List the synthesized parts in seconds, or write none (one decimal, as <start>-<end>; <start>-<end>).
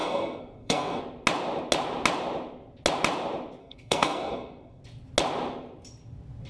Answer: 0.0-1.0; 3.6-4.8